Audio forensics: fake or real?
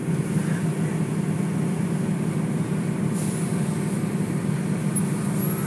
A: real